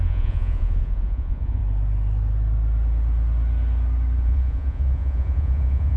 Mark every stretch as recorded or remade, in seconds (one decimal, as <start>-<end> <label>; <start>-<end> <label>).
0.0-1.6 remade; 1.6-4.2 recorded; 4.2-6.0 remade